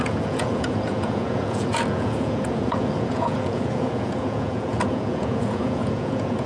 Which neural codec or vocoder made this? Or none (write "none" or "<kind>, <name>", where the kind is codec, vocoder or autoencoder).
vocoder, Vocos